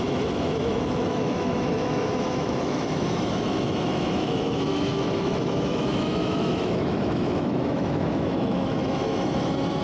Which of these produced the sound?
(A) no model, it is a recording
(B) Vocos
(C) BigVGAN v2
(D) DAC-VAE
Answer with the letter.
D